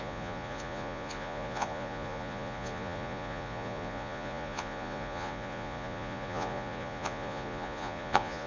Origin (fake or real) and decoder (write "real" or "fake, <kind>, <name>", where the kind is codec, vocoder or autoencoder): fake, vocoder, Vocos